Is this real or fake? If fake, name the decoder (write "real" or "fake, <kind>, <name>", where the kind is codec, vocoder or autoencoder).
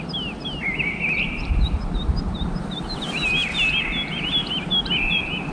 real